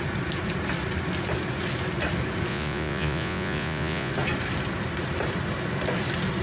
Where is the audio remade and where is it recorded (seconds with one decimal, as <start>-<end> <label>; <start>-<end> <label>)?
0.0-2.5 recorded; 2.5-4.1 remade; 4.1-6.4 recorded